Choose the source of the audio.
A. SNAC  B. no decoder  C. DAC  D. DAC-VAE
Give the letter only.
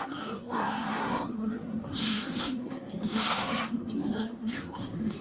A